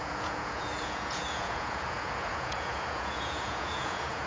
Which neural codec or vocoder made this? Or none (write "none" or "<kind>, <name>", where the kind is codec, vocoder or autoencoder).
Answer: vocoder, Vocos